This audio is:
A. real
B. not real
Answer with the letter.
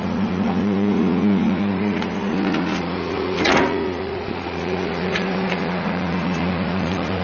B